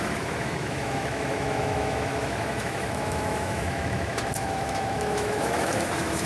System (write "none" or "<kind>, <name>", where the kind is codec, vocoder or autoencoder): autoencoder, DAC-VAE